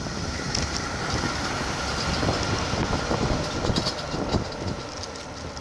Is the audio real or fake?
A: real